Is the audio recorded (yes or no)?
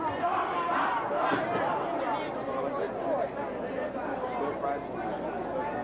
yes